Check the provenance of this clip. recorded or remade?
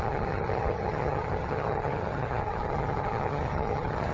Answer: remade